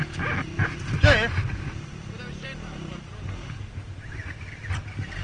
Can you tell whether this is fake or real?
real